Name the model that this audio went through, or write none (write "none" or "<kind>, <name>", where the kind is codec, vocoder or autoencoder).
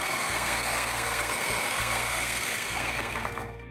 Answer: codec, SNAC